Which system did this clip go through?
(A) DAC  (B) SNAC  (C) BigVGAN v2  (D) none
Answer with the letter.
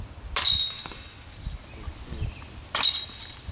D